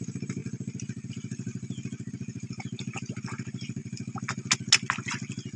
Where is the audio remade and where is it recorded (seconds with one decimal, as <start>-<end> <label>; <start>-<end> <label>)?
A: 0.0-0.4 remade; 0.4-1.1 recorded; 1.1-1.5 remade; 1.5-2.1 recorded; 2.1-3.8 remade; 3.8-5.6 recorded